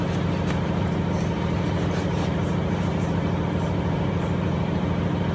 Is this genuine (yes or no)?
no